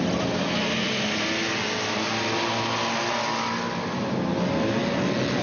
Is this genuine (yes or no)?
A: yes